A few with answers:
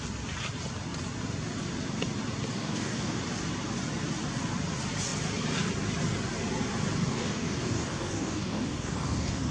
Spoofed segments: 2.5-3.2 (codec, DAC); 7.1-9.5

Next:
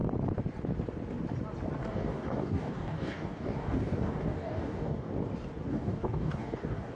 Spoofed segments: 1.8-5.1 (codec, DAC); 5.7-6.9

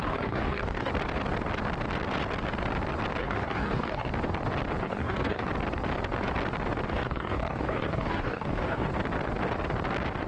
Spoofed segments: 0.0-0.9 (codec, DAC); 3.2-4.1; 4.8-5.5; 6.9-8.9

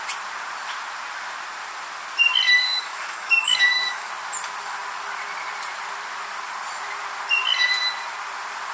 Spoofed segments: 2.5-4.1 (codec, DAC)

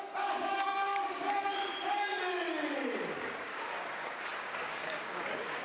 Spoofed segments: 0.0-1.7 (codec, DAC); 3.1-5.6